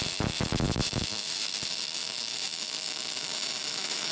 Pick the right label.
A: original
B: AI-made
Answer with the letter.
B